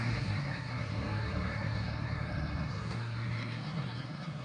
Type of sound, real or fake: fake